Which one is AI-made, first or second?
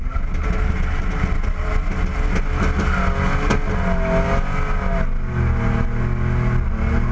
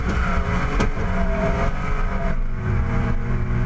second